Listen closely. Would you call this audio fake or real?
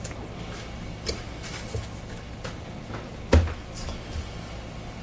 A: real